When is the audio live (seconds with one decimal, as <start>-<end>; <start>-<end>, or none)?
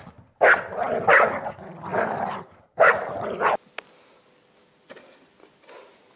0.0-1.9; 2.9-6.2